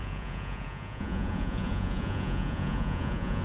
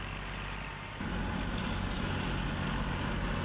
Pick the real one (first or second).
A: second